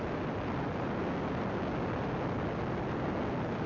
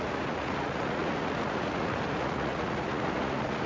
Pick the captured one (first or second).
first